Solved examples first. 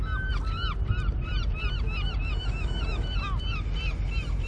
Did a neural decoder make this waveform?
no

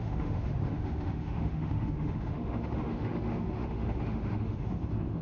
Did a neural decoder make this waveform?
yes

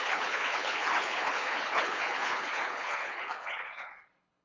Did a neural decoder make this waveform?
yes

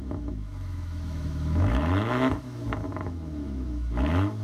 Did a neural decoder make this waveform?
yes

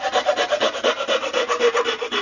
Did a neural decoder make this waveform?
no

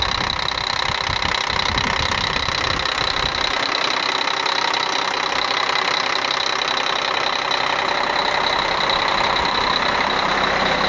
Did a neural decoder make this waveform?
no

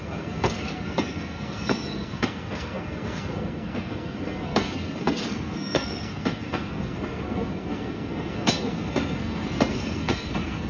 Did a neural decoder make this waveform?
yes